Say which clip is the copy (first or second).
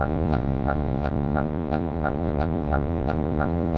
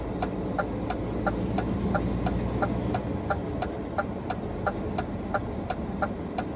first